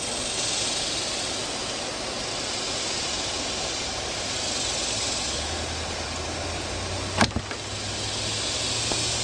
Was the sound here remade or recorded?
recorded